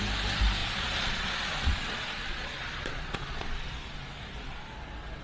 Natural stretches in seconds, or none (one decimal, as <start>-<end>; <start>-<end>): 0.0-0.6; 3.7-5.2